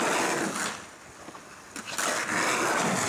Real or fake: real